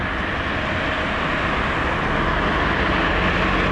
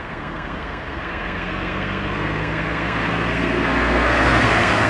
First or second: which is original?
first